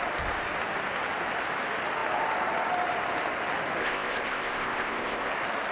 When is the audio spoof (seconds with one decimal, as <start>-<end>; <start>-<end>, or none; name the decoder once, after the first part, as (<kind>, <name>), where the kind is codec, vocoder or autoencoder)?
3.8-5.3 (codec, ZipCodec)